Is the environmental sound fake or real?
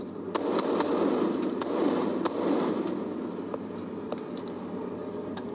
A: real